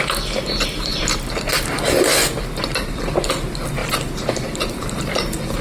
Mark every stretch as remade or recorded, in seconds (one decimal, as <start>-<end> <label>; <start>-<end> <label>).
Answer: 0.0-1.1 recorded; 1.1-3.3 remade; 3.3-3.8 recorded; 3.8-5.0 remade; 5.0-5.6 recorded